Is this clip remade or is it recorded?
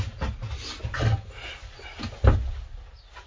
recorded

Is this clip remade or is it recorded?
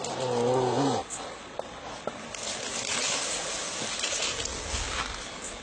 recorded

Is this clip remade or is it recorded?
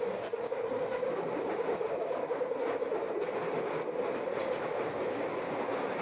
recorded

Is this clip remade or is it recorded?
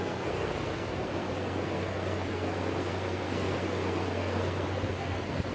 remade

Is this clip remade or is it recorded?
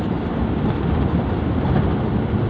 recorded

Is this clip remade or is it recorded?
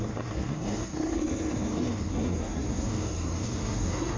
remade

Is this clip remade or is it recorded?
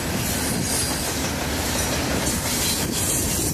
recorded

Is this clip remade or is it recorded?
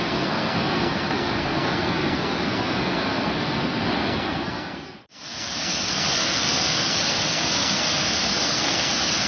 remade